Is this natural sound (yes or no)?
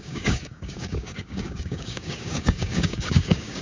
no